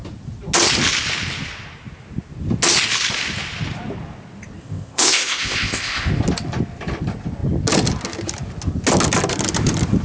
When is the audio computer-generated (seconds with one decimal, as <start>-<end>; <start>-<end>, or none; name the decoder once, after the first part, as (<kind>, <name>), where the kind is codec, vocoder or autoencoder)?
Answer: 4.6-6.1 (codec, ZipCodec)